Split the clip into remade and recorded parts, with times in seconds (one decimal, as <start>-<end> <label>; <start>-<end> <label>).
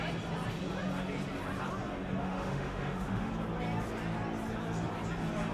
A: 0.0-2.2 recorded; 2.2-3.3 remade; 3.3-5.5 recorded